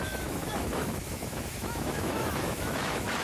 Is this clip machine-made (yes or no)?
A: yes